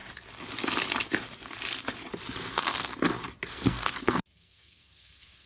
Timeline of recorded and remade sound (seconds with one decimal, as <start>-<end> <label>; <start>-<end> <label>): 0.0-2.5 recorded; 2.5-2.9 remade; 2.9-3.5 recorded; 3.5-5.5 remade